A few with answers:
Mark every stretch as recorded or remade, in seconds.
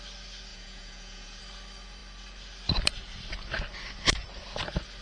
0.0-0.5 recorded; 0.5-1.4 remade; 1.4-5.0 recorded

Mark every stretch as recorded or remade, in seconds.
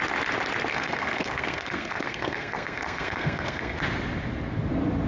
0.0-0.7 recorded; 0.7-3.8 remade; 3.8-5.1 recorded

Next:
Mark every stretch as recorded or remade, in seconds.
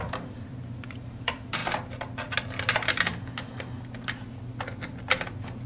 0.0-1.6 remade; 1.6-5.0 recorded; 5.0-5.7 remade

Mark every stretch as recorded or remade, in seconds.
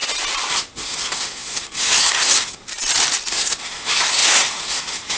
0.0-0.5 recorded; 0.5-2.7 remade; 2.7-3.3 recorded; 3.3-5.2 remade